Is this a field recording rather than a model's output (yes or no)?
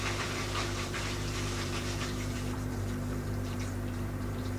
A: no